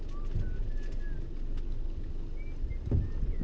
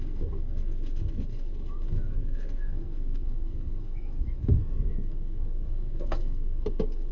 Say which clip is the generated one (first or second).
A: second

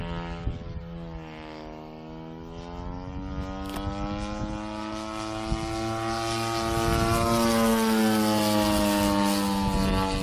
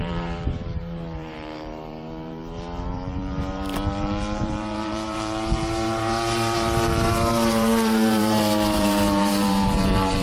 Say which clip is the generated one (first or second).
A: second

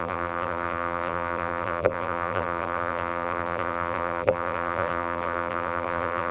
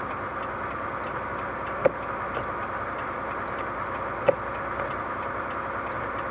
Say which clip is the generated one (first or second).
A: first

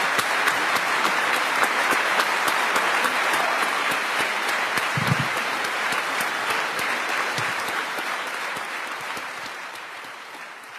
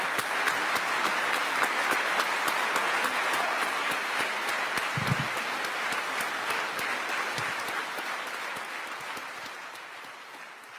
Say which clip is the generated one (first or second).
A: first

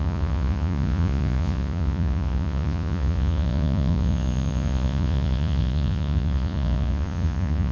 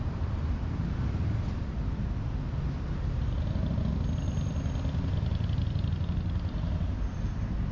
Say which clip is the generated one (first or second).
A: first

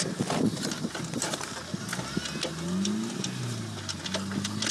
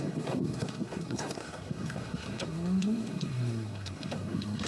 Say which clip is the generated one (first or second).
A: second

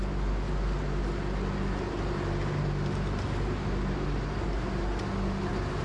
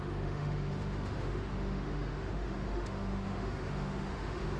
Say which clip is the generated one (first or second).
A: second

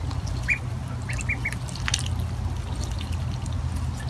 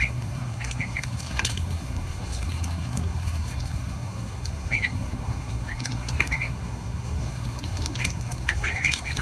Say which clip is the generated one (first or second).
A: second